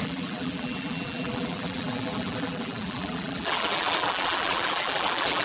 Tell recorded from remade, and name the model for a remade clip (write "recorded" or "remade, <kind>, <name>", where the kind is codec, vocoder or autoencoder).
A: remade, vocoder, BigVGAN v2